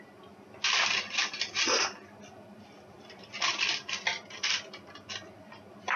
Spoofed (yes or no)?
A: yes